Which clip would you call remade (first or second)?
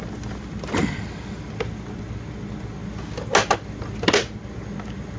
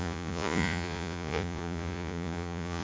second